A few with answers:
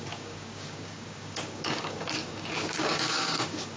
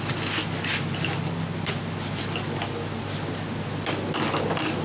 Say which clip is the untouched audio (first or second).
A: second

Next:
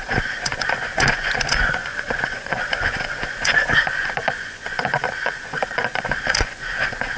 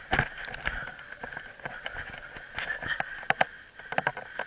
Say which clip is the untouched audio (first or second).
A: second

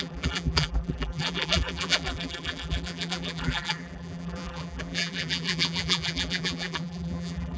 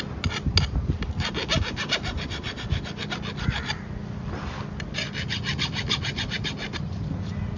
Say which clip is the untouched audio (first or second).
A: second